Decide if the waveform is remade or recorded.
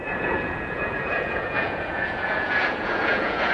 remade